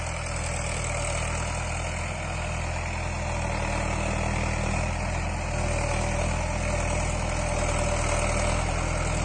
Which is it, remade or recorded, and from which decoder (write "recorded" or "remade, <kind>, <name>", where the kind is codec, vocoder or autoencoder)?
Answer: recorded